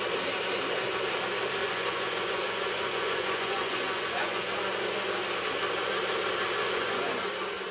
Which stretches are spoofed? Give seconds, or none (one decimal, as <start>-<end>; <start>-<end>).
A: 1.6-4.5; 6.6-7.2

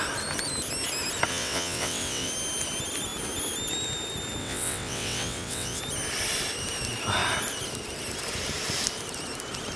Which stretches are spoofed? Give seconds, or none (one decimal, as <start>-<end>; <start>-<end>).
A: 1.3-2.3; 4.4-5.8

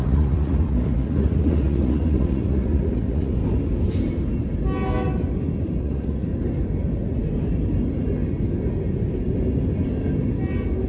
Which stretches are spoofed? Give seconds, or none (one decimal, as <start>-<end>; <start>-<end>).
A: 0.0-3.4; 5.8-6.3